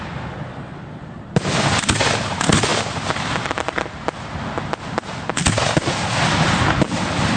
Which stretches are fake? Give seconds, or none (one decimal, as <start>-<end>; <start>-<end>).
none

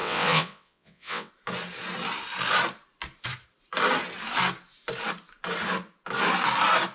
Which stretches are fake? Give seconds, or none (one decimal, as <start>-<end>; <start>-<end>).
0.0-1.3

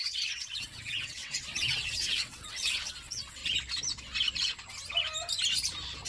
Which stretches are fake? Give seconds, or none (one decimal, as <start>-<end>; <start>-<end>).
0.0-3.4

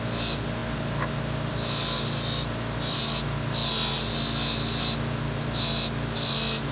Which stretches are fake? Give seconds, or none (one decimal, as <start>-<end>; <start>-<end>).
none

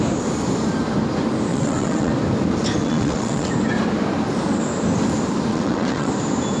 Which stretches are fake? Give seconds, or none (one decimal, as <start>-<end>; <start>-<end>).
1.5-2.1; 2.8-3.5; 5.5-6.1

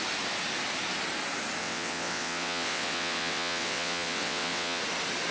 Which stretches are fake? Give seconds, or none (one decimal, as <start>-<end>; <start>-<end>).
1.6-4.8